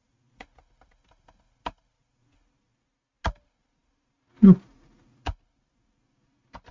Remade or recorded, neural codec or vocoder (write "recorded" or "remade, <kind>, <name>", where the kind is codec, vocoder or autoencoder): recorded